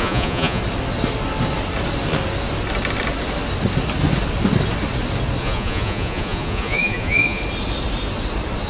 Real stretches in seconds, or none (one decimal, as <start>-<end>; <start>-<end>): 0.6-5.4; 7.4-8.7